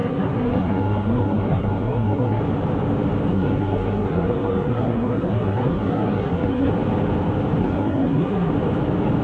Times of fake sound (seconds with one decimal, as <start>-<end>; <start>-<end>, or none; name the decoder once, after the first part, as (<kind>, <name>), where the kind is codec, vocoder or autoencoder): 0.0-2.4 (codec, SNAC); 3.3-6.7; 7.6-8.5